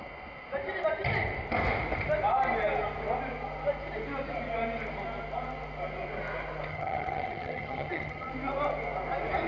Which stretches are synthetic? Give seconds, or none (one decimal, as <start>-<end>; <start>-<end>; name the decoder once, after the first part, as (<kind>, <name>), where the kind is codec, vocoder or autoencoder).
6.7-8.3 (vocoder, HiFi-GAN)